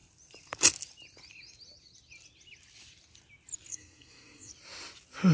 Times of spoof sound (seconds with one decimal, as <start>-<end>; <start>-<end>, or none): 3.7-4.5